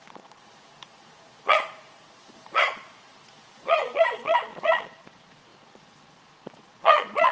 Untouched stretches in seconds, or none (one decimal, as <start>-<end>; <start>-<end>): none